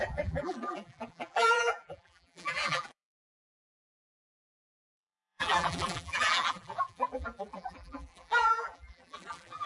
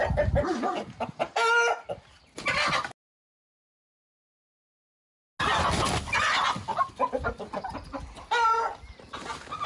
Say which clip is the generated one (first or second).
first